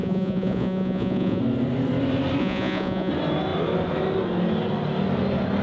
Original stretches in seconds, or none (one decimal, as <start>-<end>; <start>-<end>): 1.4-2.4; 3.1-5.6

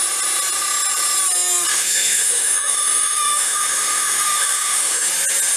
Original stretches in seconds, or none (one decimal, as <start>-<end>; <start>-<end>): 0.0-1.7; 5.1-5.6

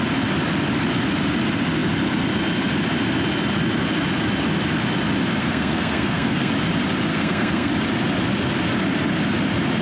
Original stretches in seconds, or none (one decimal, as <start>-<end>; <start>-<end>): 0.0-5.4; 6.5-7.1; 7.7-9.8

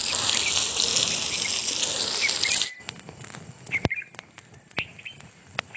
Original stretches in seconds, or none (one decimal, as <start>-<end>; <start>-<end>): 0.0-4.9

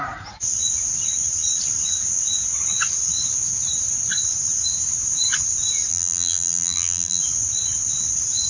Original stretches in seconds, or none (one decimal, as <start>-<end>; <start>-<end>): 0.0-5.9; 7.2-8.5

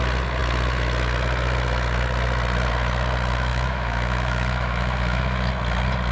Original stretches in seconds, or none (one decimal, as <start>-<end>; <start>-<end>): 0.0-3.5; 5.5-6.1

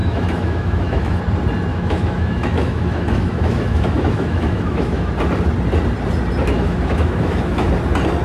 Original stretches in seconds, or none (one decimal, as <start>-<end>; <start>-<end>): 1.2-1.7; 5.1-6.4; 7.7-8.2